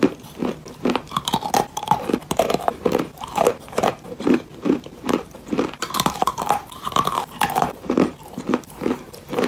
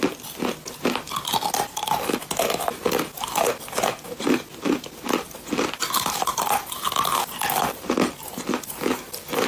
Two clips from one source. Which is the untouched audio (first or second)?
second